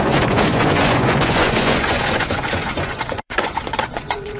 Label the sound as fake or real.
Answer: fake